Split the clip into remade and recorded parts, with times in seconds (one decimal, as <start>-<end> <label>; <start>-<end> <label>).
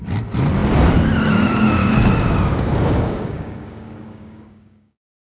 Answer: 0.0-1.8 recorded; 1.8-5.3 remade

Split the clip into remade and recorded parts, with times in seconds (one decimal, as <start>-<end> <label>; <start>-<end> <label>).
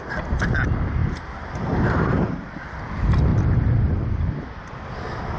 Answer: 0.0-1.0 recorded; 1.0-2.5 remade; 2.5-5.4 recorded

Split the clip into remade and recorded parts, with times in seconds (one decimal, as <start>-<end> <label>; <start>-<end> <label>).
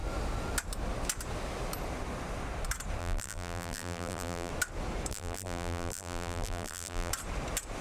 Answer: 0.0-3.0 recorded; 3.0-4.5 remade; 4.5-5.1 recorded; 5.1-7.1 remade; 7.1-7.8 recorded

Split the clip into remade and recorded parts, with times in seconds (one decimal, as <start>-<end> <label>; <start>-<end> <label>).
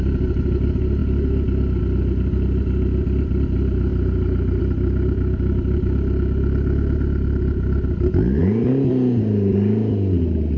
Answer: 0.0-10.6 recorded